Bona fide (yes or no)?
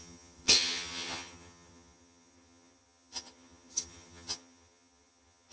no